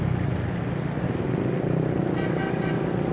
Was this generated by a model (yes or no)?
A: no